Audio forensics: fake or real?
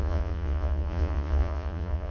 fake